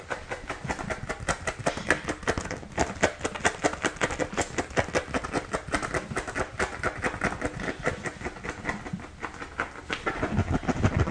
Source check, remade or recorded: recorded